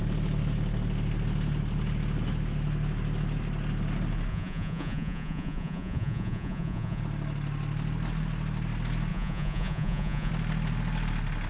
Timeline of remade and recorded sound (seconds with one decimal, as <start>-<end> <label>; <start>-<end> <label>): 0.0-4.3 recorded; 4.3-7.0 remade; 7.0-9.1 recorded; 9.1-10.3 remade; 10.3-11.5 recorded